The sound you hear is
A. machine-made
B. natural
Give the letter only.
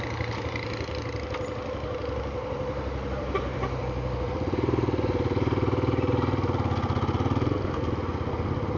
B